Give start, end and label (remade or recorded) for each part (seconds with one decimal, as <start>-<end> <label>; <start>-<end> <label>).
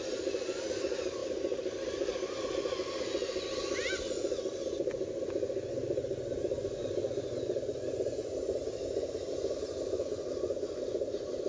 0.0-11.5 recorded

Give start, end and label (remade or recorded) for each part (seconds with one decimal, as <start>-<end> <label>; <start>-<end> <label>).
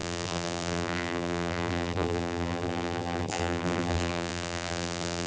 0.0-5.3 remade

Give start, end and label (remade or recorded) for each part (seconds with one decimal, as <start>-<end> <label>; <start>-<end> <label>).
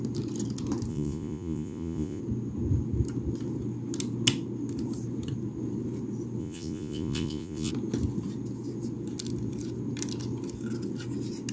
0.0-0.9 recorded; 0.9-2.2 remade; 2.2-6.4 recorded; 6.4-7.7 remade; 7.7-11.5 recorded